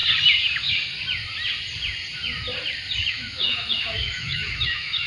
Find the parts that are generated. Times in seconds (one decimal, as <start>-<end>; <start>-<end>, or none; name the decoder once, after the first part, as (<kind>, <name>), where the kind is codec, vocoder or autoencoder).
3.1-5.1 (autoencoder, DAC-VAE)